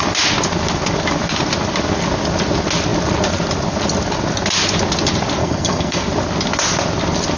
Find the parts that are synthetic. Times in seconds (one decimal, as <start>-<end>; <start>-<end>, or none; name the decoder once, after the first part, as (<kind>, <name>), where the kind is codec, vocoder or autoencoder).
5.4-6.0 (codec, SNAC)